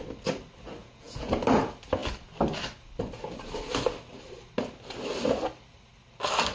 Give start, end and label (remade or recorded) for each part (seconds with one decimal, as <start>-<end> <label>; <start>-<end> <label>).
0.0-0.8 recorded; 0.8-1.3 remade; 1.3-6.5 recorded